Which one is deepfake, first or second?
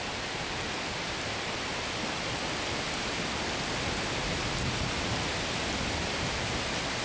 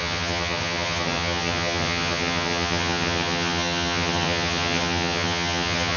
second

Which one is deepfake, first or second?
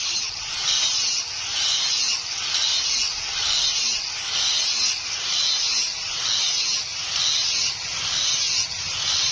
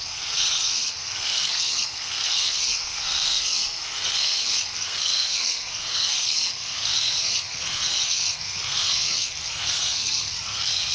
second